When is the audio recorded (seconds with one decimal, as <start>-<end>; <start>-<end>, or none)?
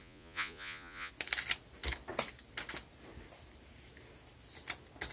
1.1-5.1